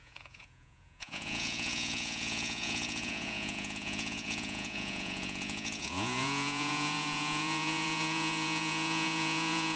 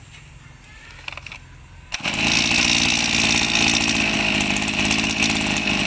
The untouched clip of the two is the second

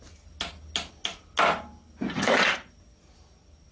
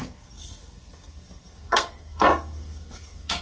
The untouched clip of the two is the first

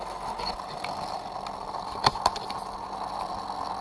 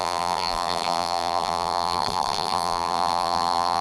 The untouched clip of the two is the first